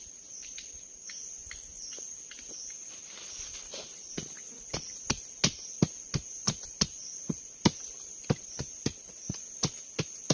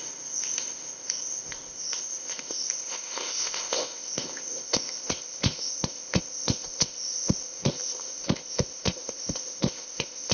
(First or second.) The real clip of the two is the first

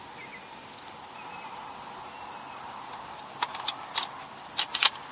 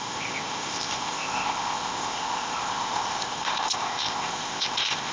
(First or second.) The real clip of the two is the first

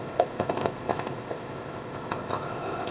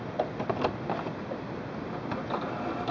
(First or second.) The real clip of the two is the second